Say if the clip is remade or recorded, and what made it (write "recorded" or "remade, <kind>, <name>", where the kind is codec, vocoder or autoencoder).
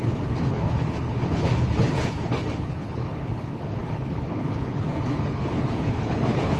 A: remade, codec, HILCodec